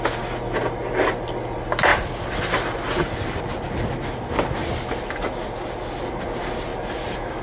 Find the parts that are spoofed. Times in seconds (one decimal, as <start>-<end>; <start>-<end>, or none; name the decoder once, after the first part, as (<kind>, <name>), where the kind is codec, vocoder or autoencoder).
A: 6.7-7.4 (vocoder, BigVGAN v2)